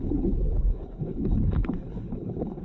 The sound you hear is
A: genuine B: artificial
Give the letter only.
B